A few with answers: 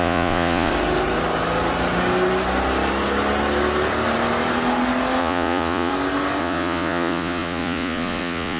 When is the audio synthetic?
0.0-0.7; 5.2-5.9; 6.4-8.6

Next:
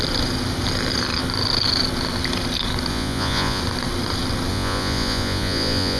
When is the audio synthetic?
2.9-3.6; 4.5-6.0

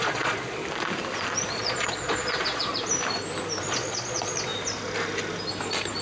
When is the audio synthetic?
0.0-0.6; 1.4-2.7; 3.6-4.5